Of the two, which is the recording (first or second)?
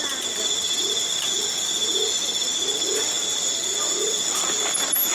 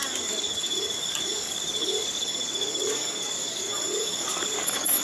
first